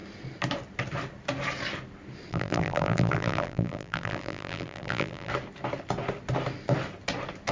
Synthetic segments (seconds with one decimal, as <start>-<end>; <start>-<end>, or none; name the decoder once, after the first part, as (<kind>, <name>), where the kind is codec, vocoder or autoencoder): 2.3-5.3 (vocoder, BigVGAN v2)